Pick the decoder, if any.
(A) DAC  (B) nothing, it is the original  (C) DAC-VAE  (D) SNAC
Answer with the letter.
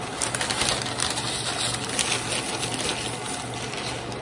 B